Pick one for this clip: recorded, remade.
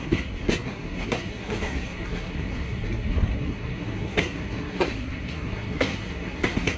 remade